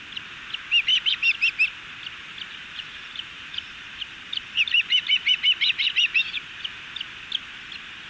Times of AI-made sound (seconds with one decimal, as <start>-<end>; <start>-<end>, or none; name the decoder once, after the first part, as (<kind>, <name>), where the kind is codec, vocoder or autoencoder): 2.6-5.9 (vocoder, BigVGAN v2)